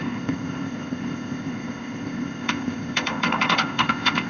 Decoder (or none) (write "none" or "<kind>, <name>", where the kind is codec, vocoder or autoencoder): codec, ZipCodec